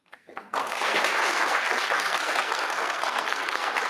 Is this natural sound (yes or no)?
no